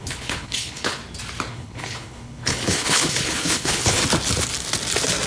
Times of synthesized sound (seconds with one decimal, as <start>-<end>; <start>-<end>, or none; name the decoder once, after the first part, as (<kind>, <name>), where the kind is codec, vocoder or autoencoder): 0.0-1.0 (codec, HILCodec); 1.5-4.0